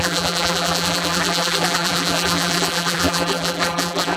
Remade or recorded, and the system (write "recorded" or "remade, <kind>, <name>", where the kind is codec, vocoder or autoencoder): remade, vocoder, BigVGAN v2